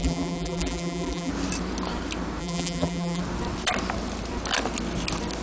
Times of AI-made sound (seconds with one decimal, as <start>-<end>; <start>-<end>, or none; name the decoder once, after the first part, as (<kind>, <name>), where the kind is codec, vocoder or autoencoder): 0.0-1.3 (vocoder, BigVGAN v2); 2.4-3.2